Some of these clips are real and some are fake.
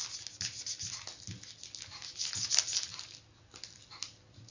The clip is real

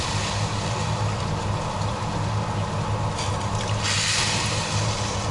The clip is real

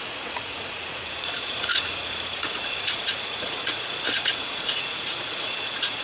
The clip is fake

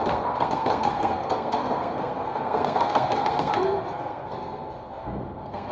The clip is fake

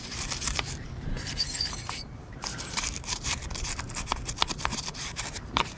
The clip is fake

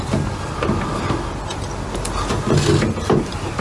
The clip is real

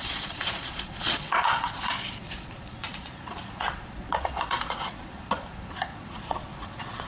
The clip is fake